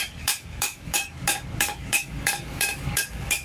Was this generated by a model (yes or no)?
yes